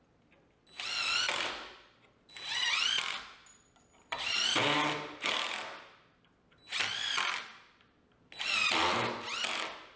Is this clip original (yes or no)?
yes